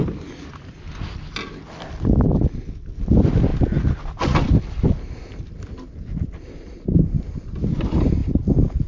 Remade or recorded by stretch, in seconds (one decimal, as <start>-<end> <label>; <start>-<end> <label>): 0.0-8.9 recorded